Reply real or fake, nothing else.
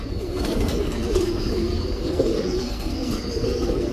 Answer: fake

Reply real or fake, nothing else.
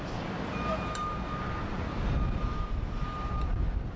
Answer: real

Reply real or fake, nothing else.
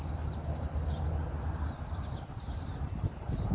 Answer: real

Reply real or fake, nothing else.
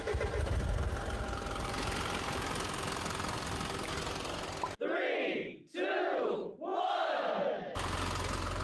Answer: real